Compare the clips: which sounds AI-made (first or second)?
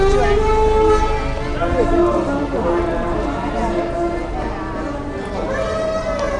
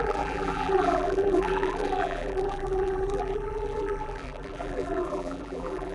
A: second